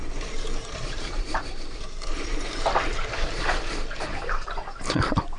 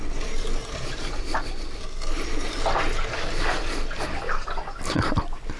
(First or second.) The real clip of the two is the second